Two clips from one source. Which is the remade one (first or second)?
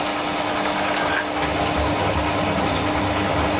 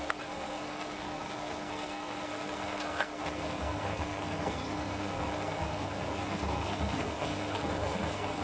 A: second